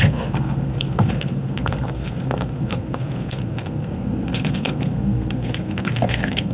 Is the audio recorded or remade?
remade